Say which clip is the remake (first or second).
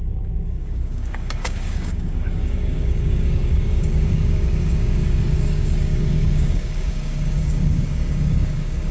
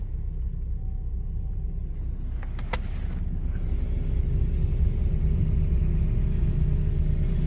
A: first